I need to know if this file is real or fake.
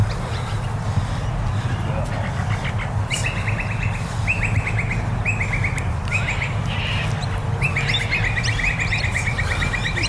real